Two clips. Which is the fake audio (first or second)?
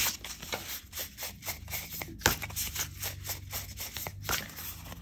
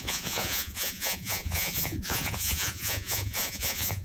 second